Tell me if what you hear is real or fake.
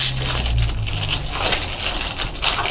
real